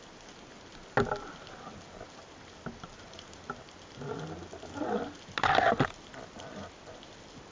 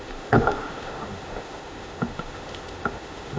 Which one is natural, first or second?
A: first